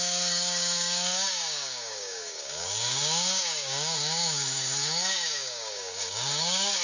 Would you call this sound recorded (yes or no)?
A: no